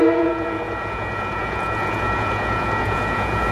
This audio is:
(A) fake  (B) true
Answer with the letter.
A